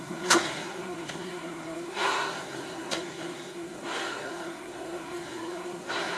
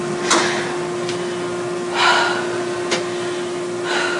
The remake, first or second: first